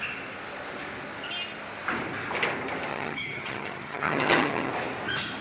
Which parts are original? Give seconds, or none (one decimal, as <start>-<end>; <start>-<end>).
0.0-2.9; 4.7-5.4